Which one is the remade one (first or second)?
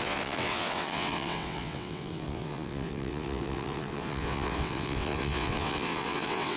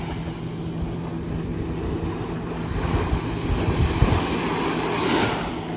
first